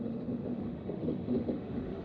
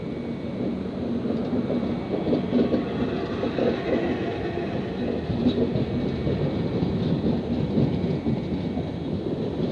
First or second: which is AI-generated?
first